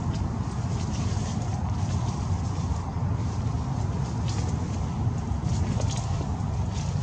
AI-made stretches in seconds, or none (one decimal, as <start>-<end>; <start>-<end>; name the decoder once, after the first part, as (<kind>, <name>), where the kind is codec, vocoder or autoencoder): none